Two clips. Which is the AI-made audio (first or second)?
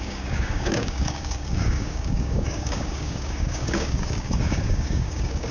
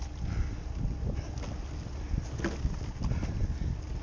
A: first